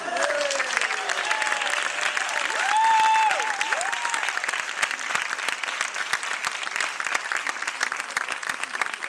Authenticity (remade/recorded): recorded